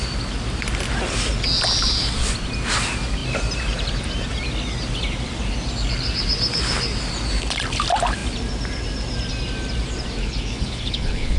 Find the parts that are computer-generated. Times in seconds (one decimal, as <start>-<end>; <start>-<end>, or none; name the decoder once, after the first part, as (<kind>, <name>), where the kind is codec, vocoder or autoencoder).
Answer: 10.2-11.4 (codec, HILCodec)